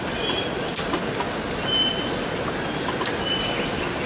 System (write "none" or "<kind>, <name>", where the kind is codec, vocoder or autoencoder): none